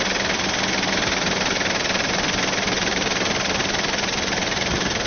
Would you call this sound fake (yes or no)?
no